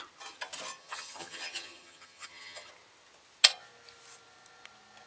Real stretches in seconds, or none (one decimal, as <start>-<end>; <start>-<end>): 0.0-0.8; 2.7-5.1